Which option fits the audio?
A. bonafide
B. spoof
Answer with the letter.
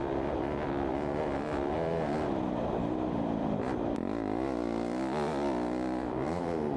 A